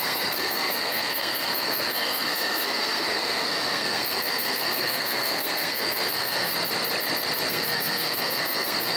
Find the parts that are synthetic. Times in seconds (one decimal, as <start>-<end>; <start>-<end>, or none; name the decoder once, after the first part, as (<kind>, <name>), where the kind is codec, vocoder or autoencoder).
0.0-6.5 (codec, SNAC); 7.5-9.0